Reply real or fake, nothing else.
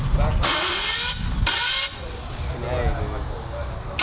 real